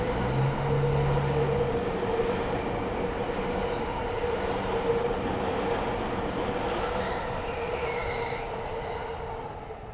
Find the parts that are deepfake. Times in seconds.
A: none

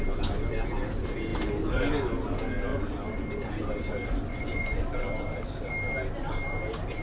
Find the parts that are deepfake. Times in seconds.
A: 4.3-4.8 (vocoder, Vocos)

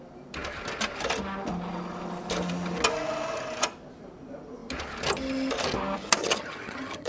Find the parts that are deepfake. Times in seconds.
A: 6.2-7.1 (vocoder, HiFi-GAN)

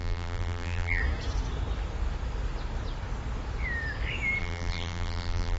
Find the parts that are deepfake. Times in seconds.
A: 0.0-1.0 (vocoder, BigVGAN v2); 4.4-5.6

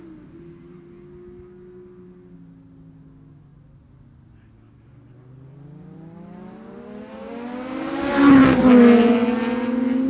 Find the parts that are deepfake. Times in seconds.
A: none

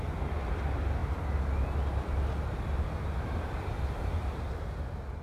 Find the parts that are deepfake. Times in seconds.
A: none